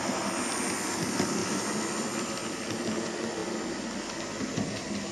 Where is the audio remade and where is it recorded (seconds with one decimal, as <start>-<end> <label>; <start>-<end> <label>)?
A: 0.0-1.4 remade; 1.4-2.1 recorded; 2.1-3.4 remade; 3.4-4.2 recorded; 4.2-5.1 remade